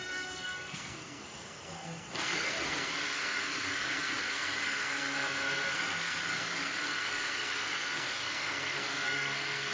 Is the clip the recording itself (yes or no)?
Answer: no